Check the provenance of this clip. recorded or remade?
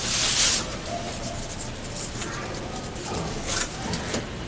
recorded